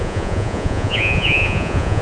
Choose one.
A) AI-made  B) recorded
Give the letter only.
A